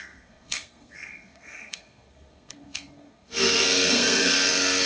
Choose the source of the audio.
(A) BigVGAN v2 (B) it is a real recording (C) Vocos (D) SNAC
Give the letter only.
D